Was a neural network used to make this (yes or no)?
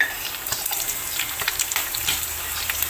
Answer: yes